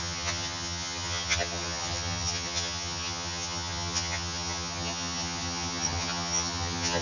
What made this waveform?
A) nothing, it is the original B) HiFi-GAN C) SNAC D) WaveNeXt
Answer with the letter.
B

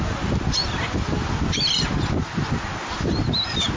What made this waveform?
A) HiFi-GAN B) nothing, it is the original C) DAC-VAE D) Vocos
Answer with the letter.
B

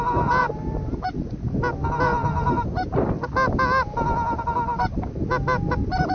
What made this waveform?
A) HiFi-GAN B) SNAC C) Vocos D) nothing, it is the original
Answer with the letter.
D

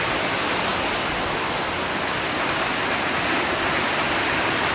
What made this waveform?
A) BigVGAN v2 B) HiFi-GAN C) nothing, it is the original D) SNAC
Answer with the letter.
C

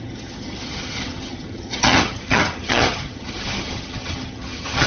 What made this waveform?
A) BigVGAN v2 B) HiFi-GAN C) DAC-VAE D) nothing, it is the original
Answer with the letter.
B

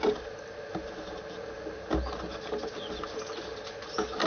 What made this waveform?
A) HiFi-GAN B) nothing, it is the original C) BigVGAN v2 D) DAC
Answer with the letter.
B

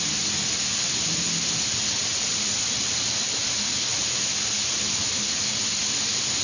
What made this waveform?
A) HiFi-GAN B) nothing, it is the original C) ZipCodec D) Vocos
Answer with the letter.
B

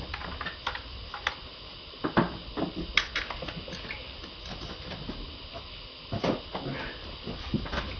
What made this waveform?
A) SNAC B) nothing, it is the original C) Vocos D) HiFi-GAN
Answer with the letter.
B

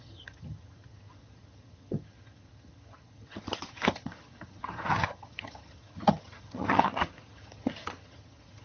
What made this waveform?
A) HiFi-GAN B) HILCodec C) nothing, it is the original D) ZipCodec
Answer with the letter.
A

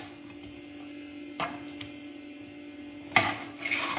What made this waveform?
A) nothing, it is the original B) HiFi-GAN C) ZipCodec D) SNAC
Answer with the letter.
A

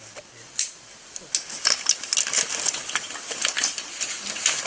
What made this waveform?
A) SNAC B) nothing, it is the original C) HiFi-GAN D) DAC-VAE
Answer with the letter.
B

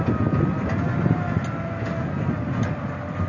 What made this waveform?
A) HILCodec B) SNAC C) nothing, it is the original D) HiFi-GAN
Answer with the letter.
C